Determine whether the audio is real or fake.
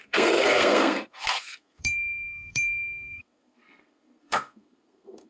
fake